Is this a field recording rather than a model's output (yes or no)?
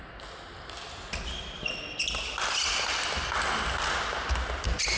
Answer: yes